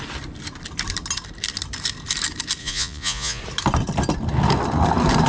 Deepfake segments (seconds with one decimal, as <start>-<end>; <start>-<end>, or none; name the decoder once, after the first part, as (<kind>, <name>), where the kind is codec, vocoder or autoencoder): 2.6-3.4 (vocoder, Vocos)